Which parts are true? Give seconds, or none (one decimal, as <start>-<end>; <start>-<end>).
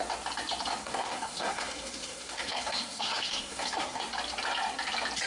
0.0-0.8; 4.0-5.3